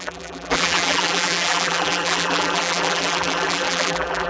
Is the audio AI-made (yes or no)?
yes